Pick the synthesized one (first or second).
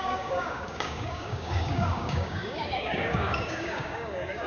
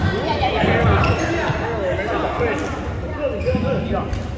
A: first